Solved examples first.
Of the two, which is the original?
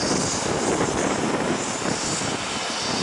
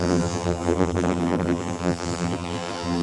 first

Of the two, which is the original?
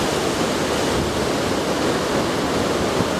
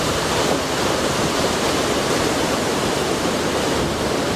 first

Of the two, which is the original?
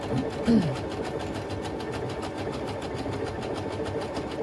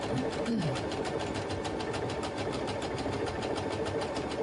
first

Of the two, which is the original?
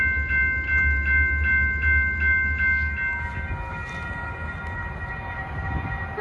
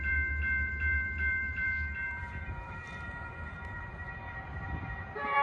first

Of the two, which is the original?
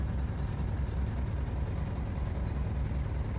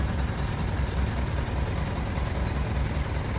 first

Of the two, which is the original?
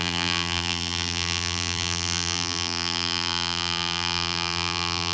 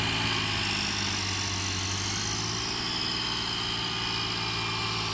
second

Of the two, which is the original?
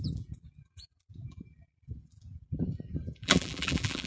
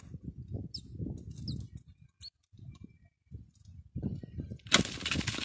second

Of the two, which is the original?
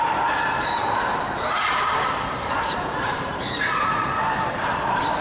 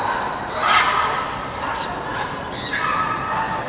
second